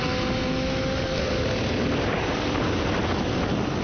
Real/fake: real